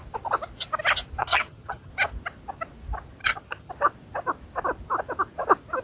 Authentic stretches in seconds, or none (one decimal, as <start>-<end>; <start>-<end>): 0.0-1.2; 1.9-3.2; 3.7-5.8